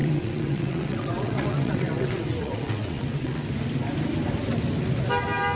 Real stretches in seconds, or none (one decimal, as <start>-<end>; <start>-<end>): 3.4-5.6